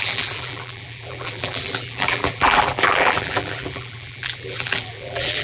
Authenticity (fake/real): fake